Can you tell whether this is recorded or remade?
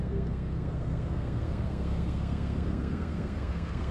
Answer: remade